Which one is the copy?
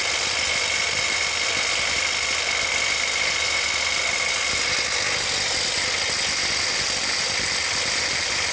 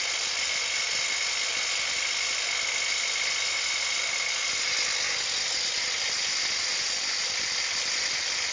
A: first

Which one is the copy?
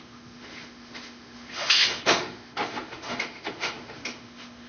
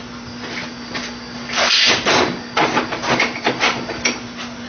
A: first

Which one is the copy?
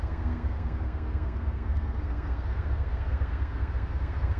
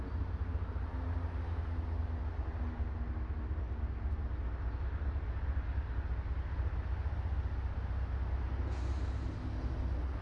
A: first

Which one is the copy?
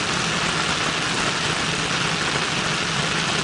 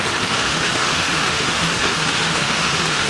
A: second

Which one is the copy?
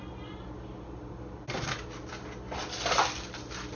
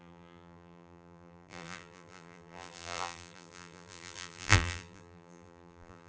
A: second